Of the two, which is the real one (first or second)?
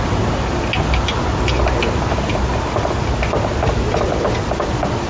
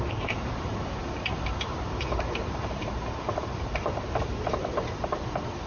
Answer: first